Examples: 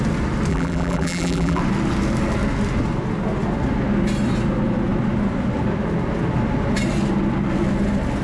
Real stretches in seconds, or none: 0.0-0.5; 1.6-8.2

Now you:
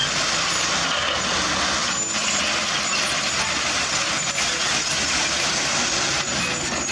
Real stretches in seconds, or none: 0.0-6.9

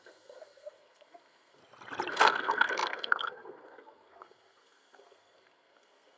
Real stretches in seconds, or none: 1.6-2.1

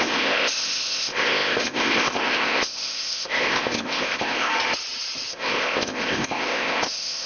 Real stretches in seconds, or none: 4.5-5.3

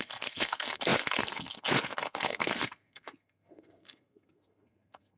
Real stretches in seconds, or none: none